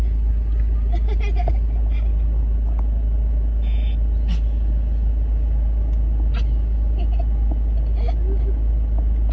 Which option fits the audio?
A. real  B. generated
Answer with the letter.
A